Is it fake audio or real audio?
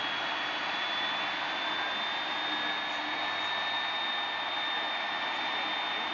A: real